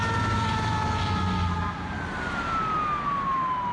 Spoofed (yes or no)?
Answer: no